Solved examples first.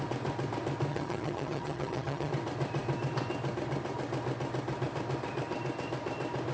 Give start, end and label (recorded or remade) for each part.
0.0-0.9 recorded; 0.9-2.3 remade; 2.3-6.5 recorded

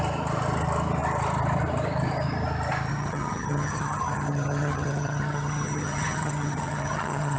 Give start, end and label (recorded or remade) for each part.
0.0-2.9 recorded; 2.9-7.4 remade

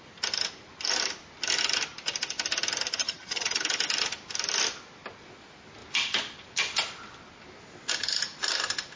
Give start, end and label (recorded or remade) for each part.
0.0-3.0 recorded; 3.0-3.6 remade; 3.6-9.0 recorded